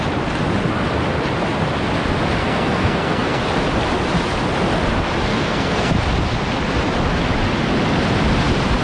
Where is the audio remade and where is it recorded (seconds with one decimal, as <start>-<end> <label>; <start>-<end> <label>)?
0.0-2.4 recorded; 2.4-3.4 remade; 3.4-5.3 recorded; 5.3-5.9 remade; 5.9-8.8 recorded